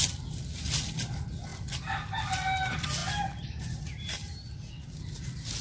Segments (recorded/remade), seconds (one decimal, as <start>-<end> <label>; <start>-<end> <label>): 0.0-5.6 recorded